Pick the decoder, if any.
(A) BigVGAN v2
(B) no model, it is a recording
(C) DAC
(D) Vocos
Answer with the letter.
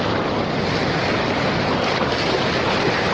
B